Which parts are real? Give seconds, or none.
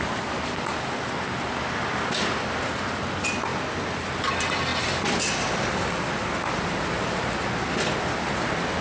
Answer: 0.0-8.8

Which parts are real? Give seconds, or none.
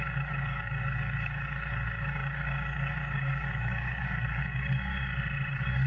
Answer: 4.9-5.5